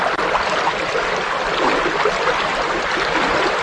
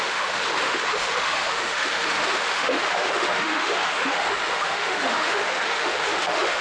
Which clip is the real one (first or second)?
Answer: first